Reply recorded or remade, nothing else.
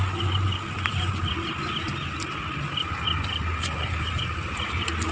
recorded